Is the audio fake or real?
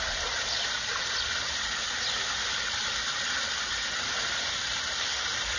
real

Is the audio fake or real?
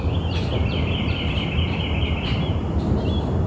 real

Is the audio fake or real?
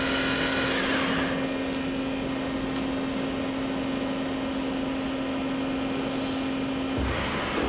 real